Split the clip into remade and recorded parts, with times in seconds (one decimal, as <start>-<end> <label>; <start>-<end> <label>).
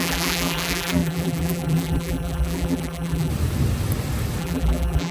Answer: 0.0-3.3 remade; 3.3-4.4 recorded; 4.4-5.1 remade